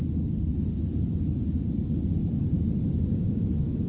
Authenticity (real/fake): real